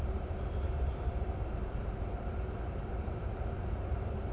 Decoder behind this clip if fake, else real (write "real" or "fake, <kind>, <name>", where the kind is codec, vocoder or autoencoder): fake, vocoder, BigVGAN v2